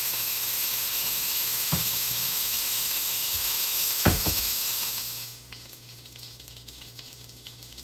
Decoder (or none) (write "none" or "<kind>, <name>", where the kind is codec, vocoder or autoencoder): autoencoder, DAC-VAE